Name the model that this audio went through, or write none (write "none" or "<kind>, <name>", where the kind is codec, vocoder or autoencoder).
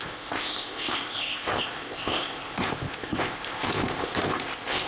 codec, ZipCodec